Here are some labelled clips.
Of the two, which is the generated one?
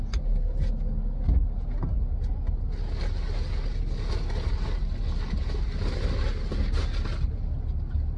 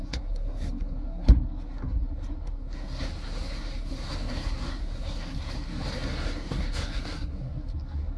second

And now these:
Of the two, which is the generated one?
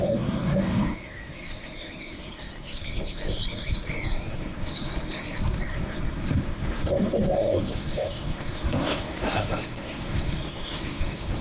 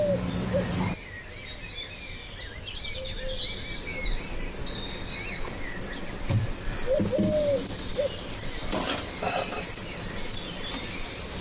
first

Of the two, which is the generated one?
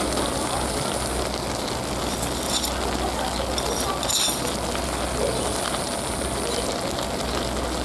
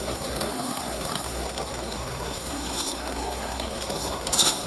second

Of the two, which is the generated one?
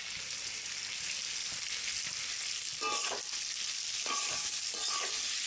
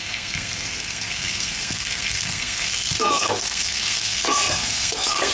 second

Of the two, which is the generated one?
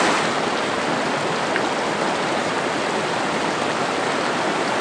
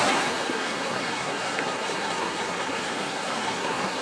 second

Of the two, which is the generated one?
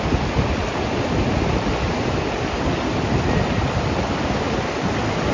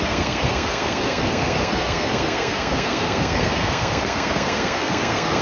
second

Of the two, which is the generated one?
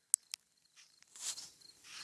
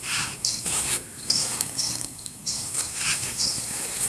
second